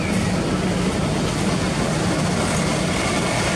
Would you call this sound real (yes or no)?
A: yes